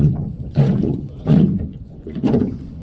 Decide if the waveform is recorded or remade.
remade